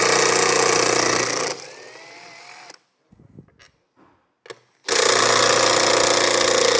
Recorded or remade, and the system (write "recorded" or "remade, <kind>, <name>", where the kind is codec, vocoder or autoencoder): recorded